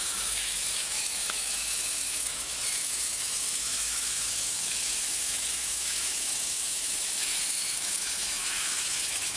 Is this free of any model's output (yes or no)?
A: no